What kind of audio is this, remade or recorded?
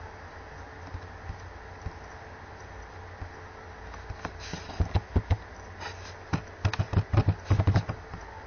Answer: recorded